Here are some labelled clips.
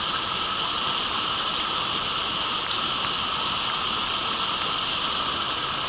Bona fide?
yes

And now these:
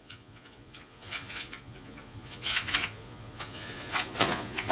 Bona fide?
no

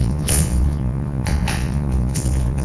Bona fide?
no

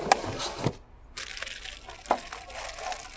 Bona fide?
yes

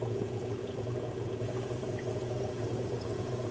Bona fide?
no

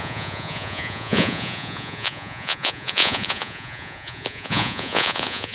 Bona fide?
no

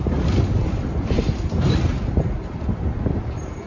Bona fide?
yes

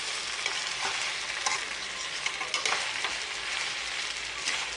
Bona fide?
yes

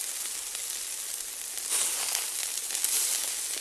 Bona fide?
yes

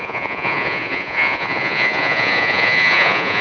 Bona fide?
no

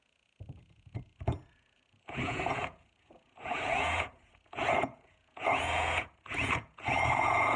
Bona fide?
no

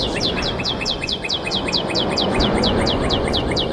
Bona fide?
no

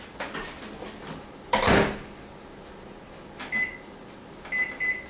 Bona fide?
yes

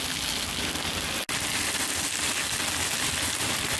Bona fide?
yes